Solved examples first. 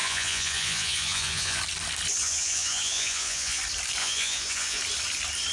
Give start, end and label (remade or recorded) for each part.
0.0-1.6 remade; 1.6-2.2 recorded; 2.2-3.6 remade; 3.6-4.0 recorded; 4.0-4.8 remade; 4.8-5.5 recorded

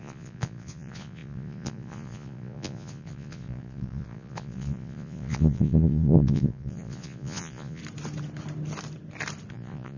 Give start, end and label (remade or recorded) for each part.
0.0-7.8 remade; 7.8-9.5 recorded; 9.5-10.0 remade

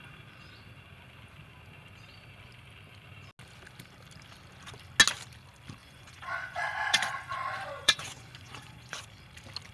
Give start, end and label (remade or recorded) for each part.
0.0-5.8 recorded; 5.8-9.0 remade; 9.0-9.7 recorded

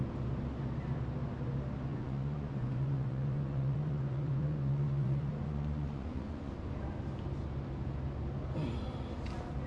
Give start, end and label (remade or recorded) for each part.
0.0-1.9 recorded; 1.9-6.5 remade; 6.5-9.7 recorded

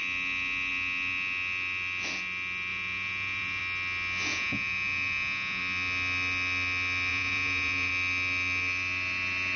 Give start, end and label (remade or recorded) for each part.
0.0-2.7 recorded; 2.7-3.6 remade; 3.6-4.3 recorded; 4.3-5.6 remade; 5.6-7.1 recorded; 7.1-7.9 remade; 7.9-9.6 recorded

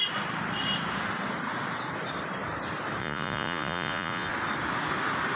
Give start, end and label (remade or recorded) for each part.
0.0-3.0 recorded; 3.0-4.3 remade; 4.3-5.4 recorded